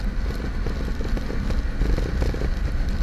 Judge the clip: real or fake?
real